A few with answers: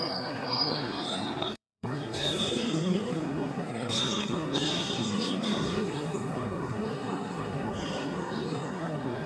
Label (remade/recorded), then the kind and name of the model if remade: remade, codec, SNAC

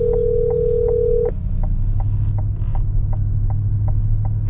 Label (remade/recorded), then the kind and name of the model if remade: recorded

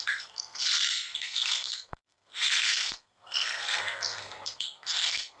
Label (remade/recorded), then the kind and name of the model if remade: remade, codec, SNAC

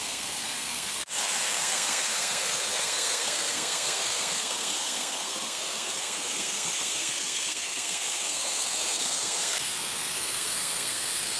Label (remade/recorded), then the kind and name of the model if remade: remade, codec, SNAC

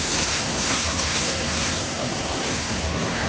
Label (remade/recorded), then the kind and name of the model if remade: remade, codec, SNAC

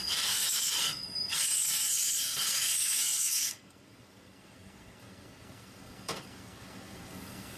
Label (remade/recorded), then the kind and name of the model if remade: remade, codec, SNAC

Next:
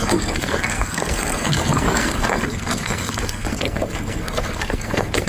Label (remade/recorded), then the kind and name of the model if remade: remade, codec, SNAC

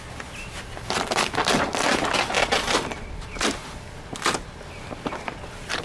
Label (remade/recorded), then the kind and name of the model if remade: recorded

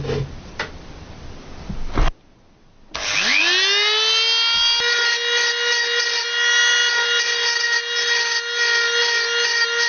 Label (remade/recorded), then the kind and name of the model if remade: recorded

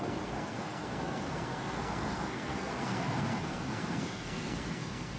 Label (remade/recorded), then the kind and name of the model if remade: remade, codec, SNAC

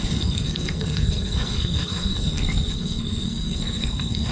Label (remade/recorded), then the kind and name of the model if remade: remade, codec, SNAC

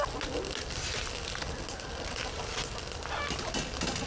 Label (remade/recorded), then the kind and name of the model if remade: recorded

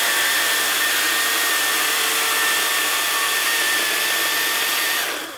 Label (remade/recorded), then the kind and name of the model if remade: recorded